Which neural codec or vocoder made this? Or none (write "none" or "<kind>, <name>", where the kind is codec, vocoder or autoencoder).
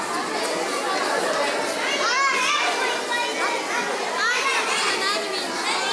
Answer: none